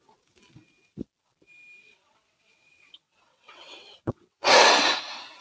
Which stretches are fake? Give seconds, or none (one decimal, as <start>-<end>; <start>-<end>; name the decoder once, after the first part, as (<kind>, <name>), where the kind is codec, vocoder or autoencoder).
1.8-5.0 (vocoder, WaveNeXt)